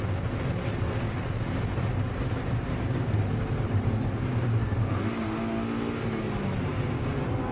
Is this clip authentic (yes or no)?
yes